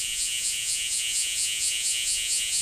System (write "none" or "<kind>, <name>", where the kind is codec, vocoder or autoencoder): vocoder, Vocos